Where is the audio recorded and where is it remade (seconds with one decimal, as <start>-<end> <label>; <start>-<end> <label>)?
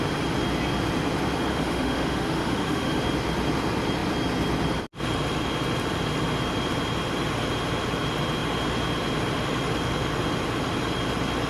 0.0-1.5 recorded; 1.5-3.0 remade; 3.0-11.5 recorded